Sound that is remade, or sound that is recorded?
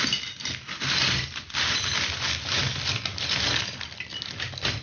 recorded